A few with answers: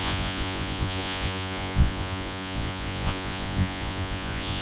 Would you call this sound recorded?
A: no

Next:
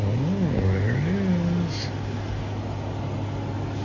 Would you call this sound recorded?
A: yes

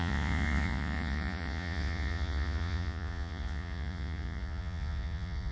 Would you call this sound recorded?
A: no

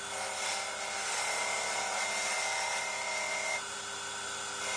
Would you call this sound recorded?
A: yes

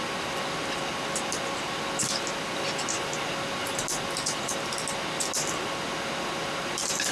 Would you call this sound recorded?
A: yes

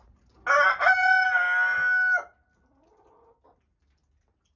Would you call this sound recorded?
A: yes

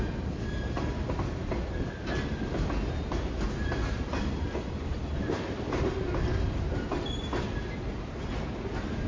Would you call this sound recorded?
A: yes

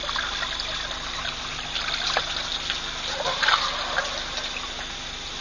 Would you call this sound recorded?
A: yes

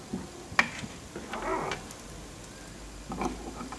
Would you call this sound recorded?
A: yes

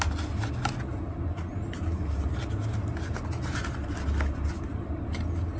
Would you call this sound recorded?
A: yes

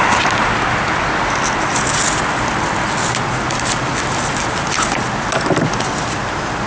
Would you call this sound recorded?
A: yes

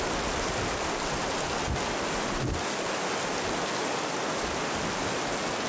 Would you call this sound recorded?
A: yes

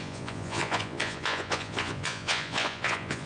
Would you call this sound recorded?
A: no